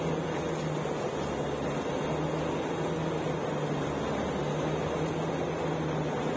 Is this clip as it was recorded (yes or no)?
yes